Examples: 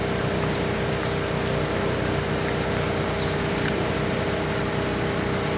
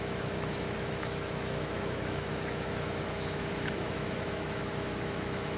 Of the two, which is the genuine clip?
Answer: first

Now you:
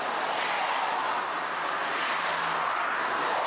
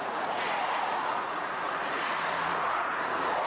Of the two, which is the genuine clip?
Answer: first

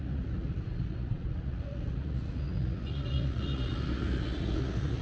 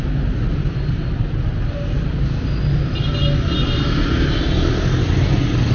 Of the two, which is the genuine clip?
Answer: second